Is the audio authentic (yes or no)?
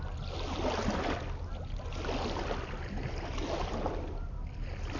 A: yes